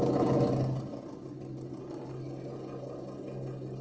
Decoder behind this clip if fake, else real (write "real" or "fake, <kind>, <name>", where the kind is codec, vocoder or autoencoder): real